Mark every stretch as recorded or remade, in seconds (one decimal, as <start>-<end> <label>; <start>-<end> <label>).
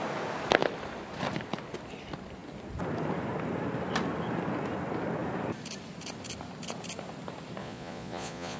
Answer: 0.0-7.6 recorded; 7.6-8.6 remade